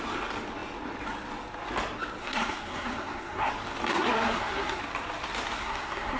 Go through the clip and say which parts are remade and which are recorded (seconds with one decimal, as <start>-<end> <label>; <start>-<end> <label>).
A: 0.0-2.2 recorded; 2.2-3.5 remade; 3.5-3.9 recorded; 3.9-4.8 remade; 4.8-5.6 recorded; 5.6-6.2 remade